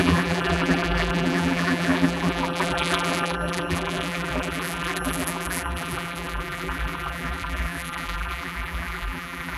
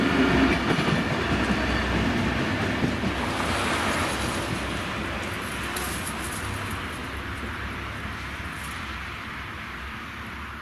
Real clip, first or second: second